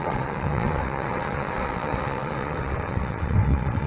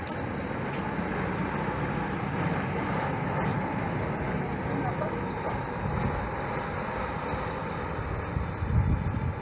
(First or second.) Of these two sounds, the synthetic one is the first